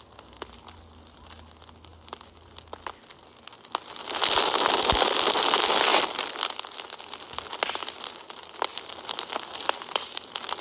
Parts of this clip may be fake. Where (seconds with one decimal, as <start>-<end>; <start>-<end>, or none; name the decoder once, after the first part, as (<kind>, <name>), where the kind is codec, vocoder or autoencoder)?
none

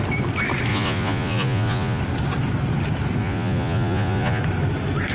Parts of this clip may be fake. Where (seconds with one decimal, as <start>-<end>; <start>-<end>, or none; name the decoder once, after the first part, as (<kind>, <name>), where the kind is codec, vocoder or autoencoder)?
0.7-2.0 (vocoder, Vocos); 3.2-4.4